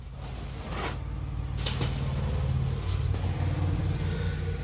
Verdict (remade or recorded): recorded